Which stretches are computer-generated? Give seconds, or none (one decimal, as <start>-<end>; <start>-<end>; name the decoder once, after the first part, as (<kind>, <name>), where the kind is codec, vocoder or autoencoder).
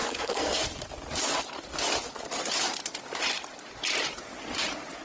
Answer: 0.0-0.6 (codec, SNAC)